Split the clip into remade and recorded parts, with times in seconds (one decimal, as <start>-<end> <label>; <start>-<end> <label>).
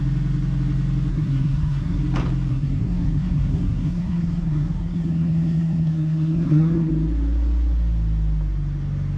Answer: 0.0-1.1 recorded; 1.1-2.0 remade; 2.0-2.5 recorded; 2.5-6.9 remade; 6.9-9.2 recorded